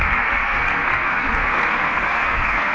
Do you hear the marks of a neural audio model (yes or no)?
yes